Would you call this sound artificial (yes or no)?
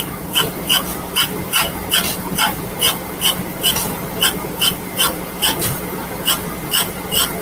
yes